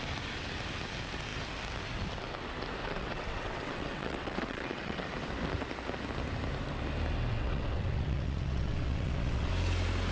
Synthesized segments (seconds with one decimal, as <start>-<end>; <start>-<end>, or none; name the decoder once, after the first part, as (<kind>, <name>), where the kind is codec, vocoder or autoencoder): 2.8-5.0 (vocoder, WaveNeXt); 7.3-9.5